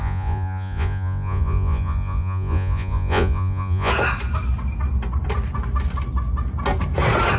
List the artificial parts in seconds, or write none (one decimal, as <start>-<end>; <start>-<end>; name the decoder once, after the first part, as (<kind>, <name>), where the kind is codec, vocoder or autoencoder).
0.0-3.9 (vocoder, Vocos)